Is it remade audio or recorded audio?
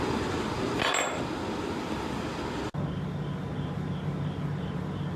recorded